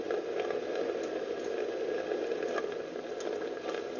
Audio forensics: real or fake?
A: real